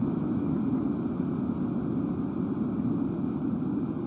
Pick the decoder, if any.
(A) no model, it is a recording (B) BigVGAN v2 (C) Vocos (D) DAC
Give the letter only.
A